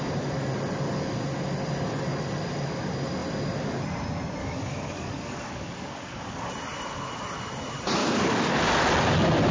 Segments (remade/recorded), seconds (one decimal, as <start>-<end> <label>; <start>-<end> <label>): 0.0-4.4 recorded; 4.4-6.5 remade; 6.5-8.0 recorded; 8.0-8.6 remade; 8.6-9.5 recorded